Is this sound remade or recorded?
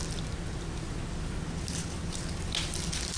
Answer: recorded